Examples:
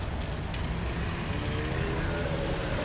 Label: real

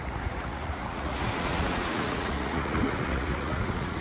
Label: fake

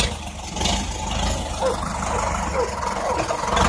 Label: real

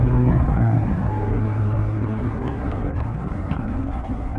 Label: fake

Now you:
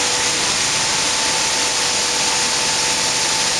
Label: real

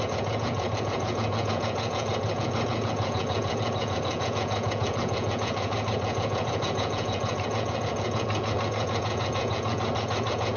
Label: fake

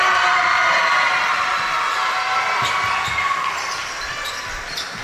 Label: real